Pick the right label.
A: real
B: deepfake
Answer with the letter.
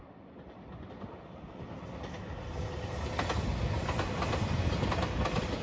A